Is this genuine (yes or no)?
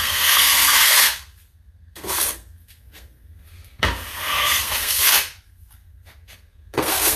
no